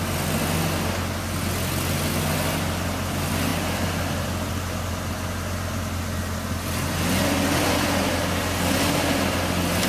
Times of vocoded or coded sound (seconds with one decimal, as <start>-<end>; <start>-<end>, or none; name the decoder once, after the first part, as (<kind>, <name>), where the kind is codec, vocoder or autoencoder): none